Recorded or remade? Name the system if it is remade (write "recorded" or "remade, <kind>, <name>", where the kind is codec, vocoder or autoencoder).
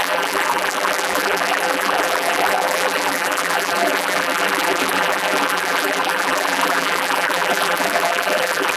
remade, vocoder, BigVGAN v2